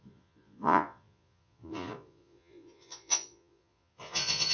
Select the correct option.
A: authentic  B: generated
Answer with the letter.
B